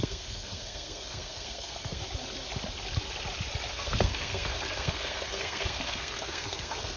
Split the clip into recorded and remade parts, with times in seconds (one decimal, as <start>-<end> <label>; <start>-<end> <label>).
0.0-2.0 remade; 2.0-3.7 recorded; 3.7-7.0 remade